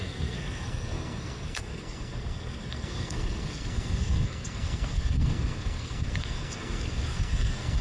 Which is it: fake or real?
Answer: fake